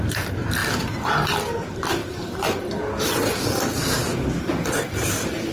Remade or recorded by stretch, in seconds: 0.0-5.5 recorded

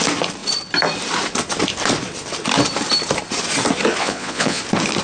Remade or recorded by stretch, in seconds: 0.0-4.0 recorded; 4.0-4.6 remade; 4.6-5.0 recorded

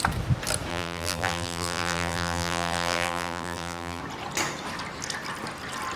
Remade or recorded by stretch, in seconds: 0.0-0.7 recorded; 0.7-4.0 remade; 4.0-6.0 recorded

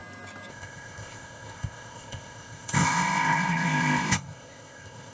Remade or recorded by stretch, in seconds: 0.0-0.5 recorded; 0.5-5.1 remade

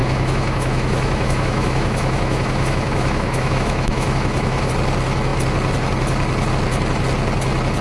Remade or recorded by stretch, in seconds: 0.0-4.7 remade; 4.7-7.8 recorded

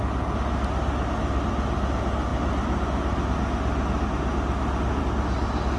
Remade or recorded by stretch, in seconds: 0.0-5.8 recorded